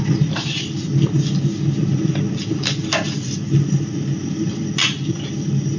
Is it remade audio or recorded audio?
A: recorded